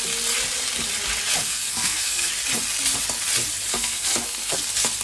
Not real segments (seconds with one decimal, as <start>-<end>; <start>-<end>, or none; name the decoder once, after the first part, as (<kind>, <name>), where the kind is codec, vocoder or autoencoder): 1.4-2.3 (codec, SNAC); 3.7-4.6